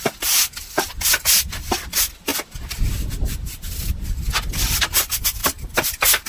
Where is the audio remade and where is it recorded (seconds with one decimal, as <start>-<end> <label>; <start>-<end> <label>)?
0.0-6.3 recorded

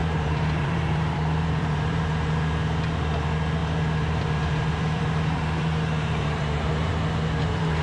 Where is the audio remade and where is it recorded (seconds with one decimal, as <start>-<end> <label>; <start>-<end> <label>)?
0.0-2.0 remade; 2.0-3.6 recorded; 3.6-6.9 remade; 6.9-7.8 recorded

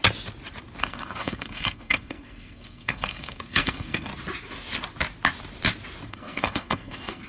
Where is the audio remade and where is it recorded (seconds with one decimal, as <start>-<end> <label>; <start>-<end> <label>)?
0.0-0.8 recorded; 0.8-4.1 remade; 4.1-6.1 recorded; 6.1-7.3 remade

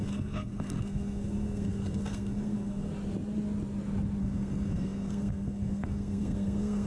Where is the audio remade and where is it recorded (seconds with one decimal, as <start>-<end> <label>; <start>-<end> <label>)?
0.0-2.9 remade; 2.9-4.2 recorded; 4.2-6.9 remade

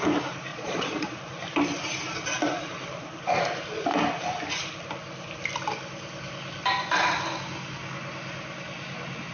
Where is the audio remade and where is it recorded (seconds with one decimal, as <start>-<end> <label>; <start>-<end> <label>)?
0.0-0.5 recorded; 0.5-1.2 remade; 1.2-9.3 recorded

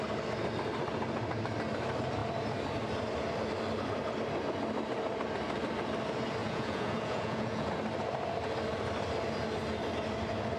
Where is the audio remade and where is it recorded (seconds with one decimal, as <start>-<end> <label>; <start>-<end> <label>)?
0.0-6.4 recorded; 6.4-7.7 remade; 7.7-10.6 recorded

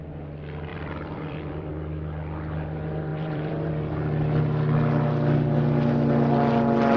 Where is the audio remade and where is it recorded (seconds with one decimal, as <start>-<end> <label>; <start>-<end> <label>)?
0.0-0.7 recorded; 0.7-1.7 remade; 1.7-3.1 recorded; 3.1-3.7 remade; 3.7-7.0 recorded